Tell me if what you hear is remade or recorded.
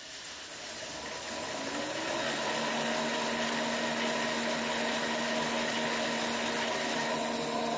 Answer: recorded